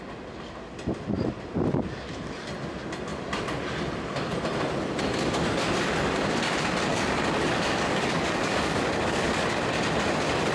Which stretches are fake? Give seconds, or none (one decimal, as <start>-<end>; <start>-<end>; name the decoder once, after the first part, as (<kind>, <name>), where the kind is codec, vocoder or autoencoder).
6.9-9.5 (codec, DAC)